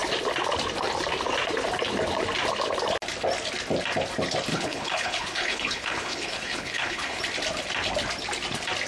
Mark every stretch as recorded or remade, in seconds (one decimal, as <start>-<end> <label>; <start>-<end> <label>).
0.0-4.5 recorded; 4.5-7.2 remade; 7.2-8.9 recorded